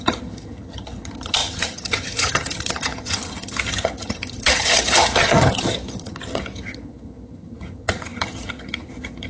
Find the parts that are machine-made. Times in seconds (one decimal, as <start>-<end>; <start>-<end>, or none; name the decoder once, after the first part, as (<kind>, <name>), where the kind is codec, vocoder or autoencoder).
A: 0.0-9.3 (vocoder, HiFi-GAN)